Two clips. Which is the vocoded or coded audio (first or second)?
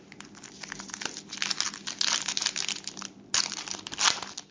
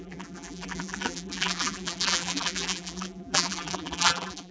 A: second